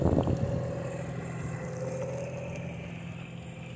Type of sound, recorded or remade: recorded